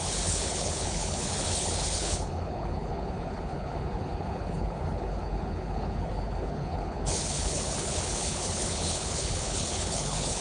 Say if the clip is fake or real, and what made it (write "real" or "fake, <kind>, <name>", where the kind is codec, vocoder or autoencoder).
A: fake, codec, HILCodec